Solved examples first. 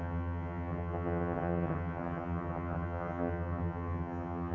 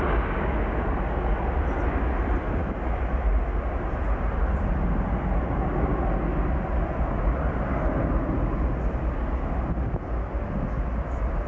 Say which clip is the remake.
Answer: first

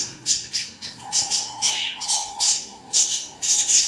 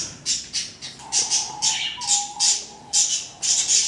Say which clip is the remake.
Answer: first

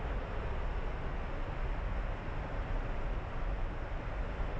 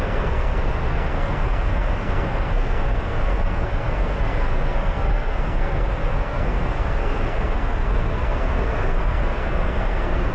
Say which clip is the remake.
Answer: second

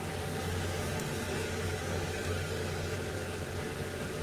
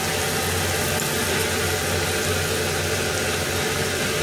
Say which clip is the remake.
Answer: first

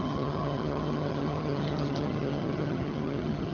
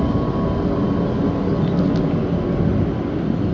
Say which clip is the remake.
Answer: first